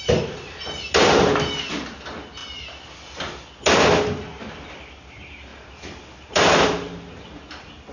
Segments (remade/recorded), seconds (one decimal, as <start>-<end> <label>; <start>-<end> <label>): 0.0-5.5 recorded; 5.5-7.4 remade; 7.4-7.9 recorded